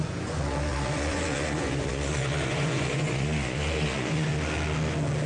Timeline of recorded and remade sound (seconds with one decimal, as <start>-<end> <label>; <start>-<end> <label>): 0.0-4.3 remade; 4.3-5.3 recorded